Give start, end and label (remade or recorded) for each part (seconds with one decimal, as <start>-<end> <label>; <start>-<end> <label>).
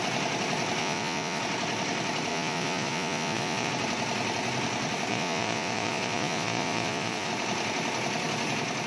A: 0.0-0.8 recorded; 0.8-1.4 remade; 1.4-2.3 recorded; 2.3-3.7 remade; 3.7-5.1 recorded; 5.1-7.3 remade; 7.3-8.9 recorded